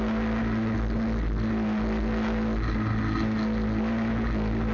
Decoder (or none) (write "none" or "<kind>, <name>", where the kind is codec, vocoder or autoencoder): none